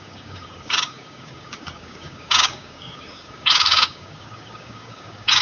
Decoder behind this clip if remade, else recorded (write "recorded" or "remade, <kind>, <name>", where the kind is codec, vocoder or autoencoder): remade, codec, DAC